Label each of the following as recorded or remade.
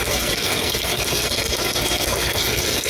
remade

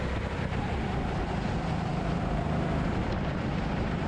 remade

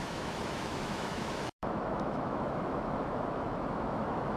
remade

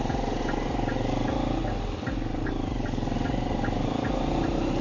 recorded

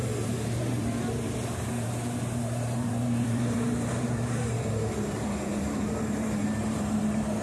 remade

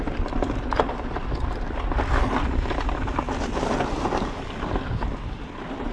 recorded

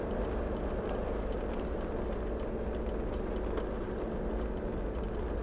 recorded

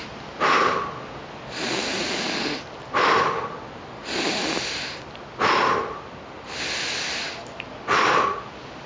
recorded